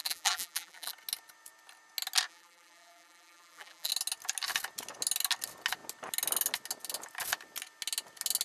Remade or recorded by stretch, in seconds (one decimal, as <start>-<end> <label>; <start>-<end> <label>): 0.0-0.9 remade; 0.9-2.3 recorded; 2.3-3.9 remade; 3.9-8.4 recorded